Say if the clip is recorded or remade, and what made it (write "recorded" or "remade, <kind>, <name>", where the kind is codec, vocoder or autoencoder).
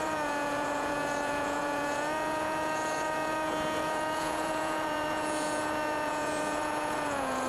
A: remade, vocoder, Vocos